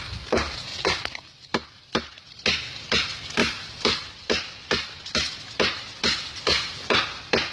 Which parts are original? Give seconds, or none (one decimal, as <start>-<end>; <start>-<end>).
0.0-3.4; 4.4-7.5